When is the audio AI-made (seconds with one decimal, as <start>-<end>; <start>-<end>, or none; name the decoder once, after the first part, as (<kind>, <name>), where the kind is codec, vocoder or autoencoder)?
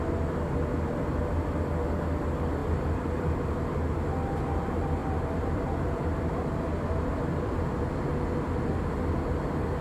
2.6-3.5 (vocoder, BigVGAN v2); 5.0-7.8